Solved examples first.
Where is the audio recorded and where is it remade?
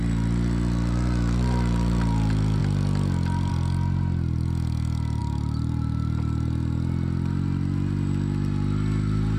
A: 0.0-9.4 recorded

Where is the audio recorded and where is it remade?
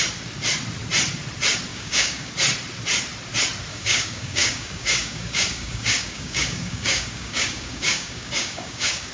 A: 0.0-1.7 recorded; 1.7-2.3 remade; 2.3-3.7 recorded; 3.7-9.1 remade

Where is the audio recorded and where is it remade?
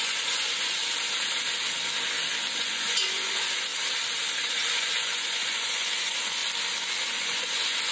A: 0.0-0.8 remade; 0.8-2.6 recorded; 2.6-3.7 remade; 3.7-4.3 recorded; 4.3-6.4 remade; 6.4-7.2 recorded; 7.2-7.9 remade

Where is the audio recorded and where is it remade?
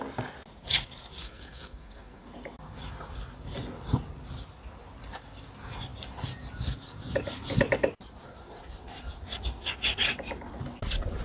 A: 0.0-1.2 recorded; 1.2-2.2 remade; 2.2-11.2 recorded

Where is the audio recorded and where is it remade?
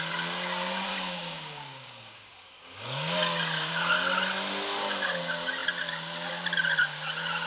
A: 0.0-0.9 recorded; 0.9-3.7 remade; 3.7-7.5 recorded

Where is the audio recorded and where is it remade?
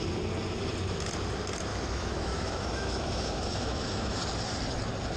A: 0.0-1.7 recorded; 1.7-4.2 remade; 4.2-5.2 recorded